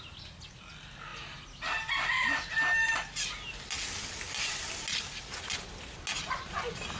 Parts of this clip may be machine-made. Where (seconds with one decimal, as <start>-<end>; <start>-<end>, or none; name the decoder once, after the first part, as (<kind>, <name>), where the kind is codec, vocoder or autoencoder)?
none

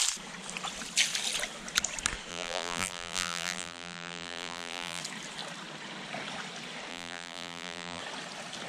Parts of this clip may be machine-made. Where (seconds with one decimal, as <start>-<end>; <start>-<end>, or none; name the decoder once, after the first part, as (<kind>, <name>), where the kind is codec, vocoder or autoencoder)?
2.3-5.0 (vocoder, BigVGAN v2); 6.9-8.0

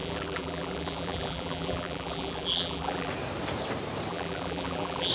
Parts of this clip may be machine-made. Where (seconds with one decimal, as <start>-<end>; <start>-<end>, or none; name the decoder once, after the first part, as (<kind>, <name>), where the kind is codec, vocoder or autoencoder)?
0.0-3.1 (vocoder, BigVGAN v2); 4.1-5.1

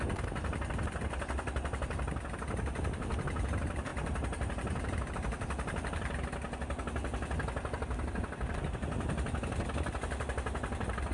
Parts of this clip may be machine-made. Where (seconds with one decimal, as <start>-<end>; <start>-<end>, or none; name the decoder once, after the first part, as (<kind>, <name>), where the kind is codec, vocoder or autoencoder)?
0.0-7.1 (vocoder, BigVGAN v2); 8.1-11.1

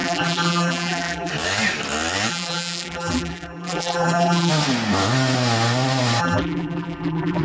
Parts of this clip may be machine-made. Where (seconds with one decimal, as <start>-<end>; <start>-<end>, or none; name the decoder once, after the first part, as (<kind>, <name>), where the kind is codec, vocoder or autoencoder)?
0.0-1.3 (vocoder, BigVGAN v2); 2.3-4.5; 6.2-7.4

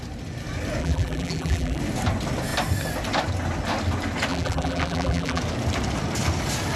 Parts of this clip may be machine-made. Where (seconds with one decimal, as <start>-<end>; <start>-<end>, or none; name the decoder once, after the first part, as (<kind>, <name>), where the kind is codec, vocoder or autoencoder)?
0.8-1.8 (vocoder, BigVGAN v2); 4.3-5.4

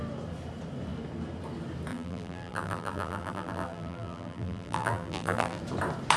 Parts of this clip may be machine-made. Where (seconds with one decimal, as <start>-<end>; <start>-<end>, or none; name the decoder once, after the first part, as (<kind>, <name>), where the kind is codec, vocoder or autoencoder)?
1.9-5.6 (vocoder, BigVGAN v2)